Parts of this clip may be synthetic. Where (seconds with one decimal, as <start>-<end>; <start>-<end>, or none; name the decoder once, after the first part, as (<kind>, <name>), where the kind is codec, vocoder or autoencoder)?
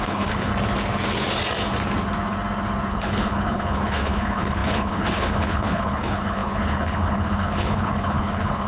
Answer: 0.0-0.5 (codec, HILCodec); 2.9-8.7